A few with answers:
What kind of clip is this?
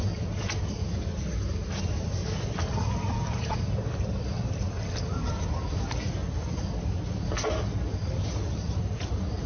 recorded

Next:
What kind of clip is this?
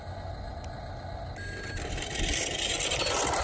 recorded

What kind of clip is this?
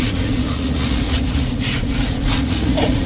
remade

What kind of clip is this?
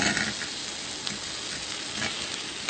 recorded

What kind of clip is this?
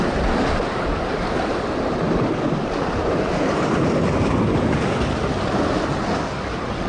recorded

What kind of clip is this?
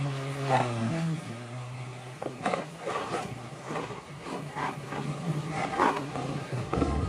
remade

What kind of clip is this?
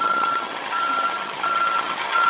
remade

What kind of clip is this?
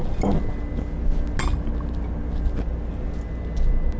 recorded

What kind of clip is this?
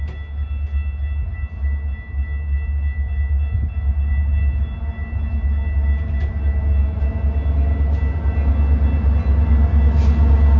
recorded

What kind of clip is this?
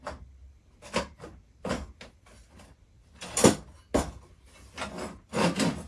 recorded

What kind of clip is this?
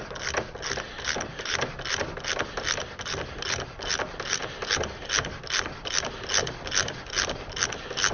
recorded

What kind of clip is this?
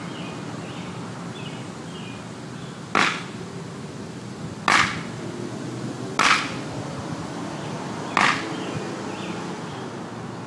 recorded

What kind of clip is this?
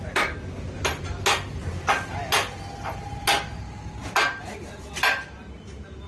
recorded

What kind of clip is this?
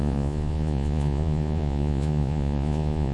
remade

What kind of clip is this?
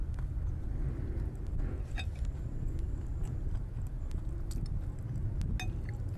recorded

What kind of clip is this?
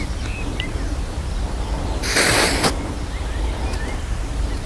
recorded